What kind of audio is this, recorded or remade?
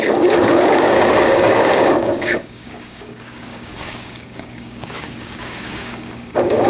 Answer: remade